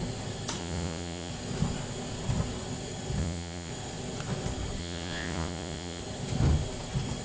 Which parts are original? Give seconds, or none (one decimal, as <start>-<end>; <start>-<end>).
0.0-0.6; 1.3-3.2; 3.7-4.8; 6.0-7.2